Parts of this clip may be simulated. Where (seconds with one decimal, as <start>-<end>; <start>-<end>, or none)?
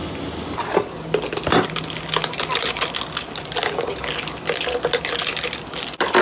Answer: none